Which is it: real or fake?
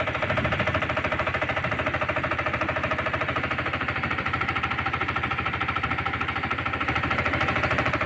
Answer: fake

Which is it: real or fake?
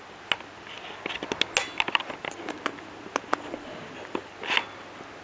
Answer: real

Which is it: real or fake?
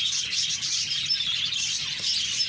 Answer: real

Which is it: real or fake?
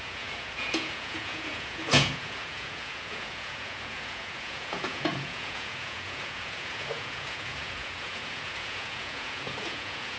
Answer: fake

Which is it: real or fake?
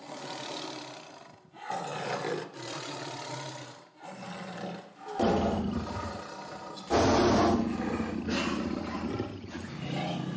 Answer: real